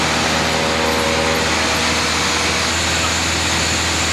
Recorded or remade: recorded